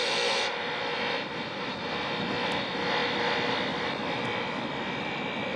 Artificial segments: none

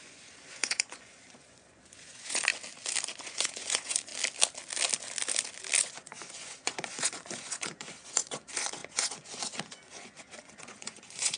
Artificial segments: 0.0-2.5 (vocoder, Vocos); 3.2-4.1; 5.8-11.4

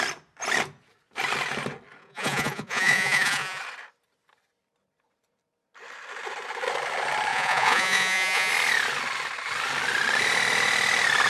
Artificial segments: 2.0-3.6 (vocoder, Vocos); 7.3-8.5

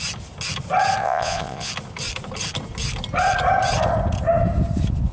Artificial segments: 1.0-1.7 (vocoder, Vocos)

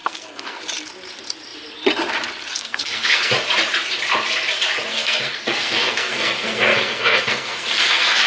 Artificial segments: 0.0-0.6 (codec, SNAC); 2.5-3.3; 4.9-8.3

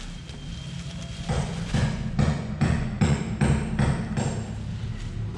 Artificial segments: 1.1-3.2 (vocoder, Vocos)